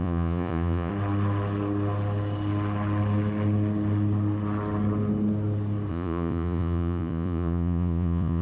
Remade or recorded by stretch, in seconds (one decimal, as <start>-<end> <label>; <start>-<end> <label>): 0.0-0.9 remade; 0.9-5.9 recorded; 5.9-8.4 remade